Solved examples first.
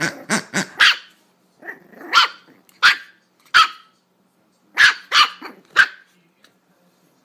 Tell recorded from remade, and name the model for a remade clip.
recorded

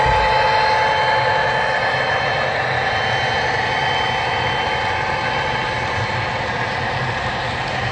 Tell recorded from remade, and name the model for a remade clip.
recorded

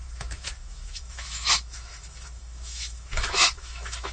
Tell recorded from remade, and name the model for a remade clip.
remade, autoencoder, DAC-VAE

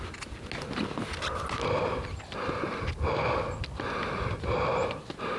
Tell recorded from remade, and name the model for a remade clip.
recorded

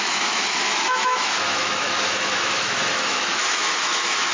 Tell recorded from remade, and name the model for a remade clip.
remade, autoencoder, DAC-VAE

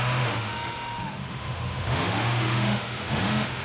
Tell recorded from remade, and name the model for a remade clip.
remade, autoencoder, DAC-VAE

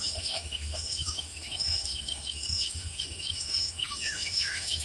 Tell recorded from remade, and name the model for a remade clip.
remade, autoencoder, DAC-VAE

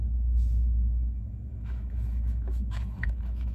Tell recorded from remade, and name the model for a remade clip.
remade, autoencoder, DAC-VAE